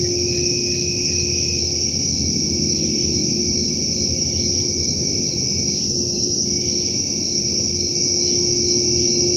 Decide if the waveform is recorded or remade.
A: recorded